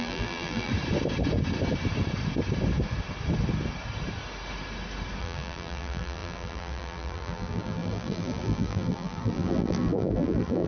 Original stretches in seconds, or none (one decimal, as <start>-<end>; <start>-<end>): 0.7-5.2